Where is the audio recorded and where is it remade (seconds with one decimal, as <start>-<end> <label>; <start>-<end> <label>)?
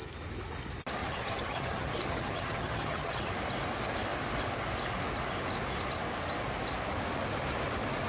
0.0-1.0 recorded; 1.0-3.3 remade; 3.3-8.1 recorded